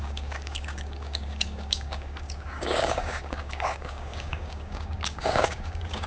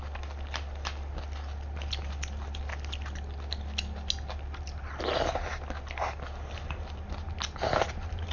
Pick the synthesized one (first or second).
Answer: first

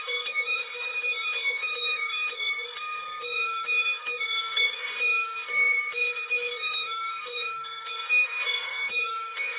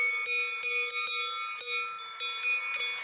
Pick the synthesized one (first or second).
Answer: first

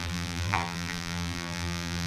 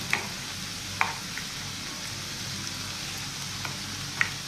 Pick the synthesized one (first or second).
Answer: first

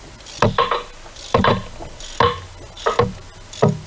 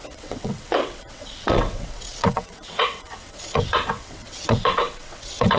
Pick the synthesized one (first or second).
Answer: second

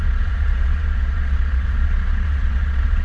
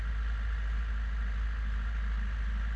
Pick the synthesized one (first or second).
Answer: first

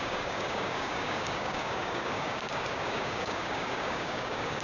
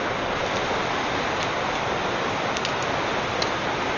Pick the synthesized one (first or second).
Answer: first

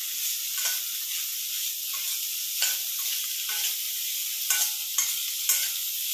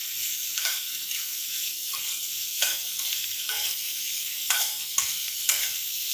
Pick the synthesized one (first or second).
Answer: second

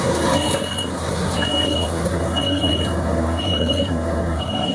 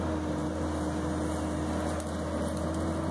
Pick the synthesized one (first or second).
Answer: first